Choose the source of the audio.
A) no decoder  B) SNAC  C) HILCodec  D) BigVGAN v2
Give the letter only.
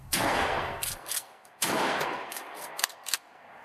B